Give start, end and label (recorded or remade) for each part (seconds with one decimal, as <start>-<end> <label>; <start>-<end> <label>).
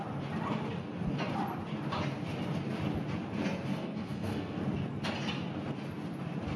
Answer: 0.0-3.7 recorded; 3.7-4.6 remade; 4.6-6.6 recorded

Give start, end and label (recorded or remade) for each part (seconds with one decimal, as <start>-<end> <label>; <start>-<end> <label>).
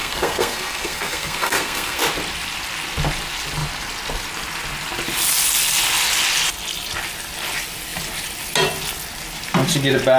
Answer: 0.0-2.0 remade; 2.0-10.2 recorded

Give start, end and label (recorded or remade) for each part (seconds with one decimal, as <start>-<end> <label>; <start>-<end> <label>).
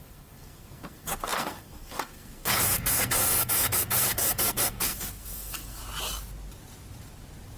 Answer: 0.0-5.8 remade; 5.8-7.6 recorded